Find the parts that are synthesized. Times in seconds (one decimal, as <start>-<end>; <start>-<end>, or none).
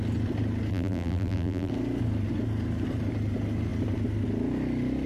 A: 0.7-1.7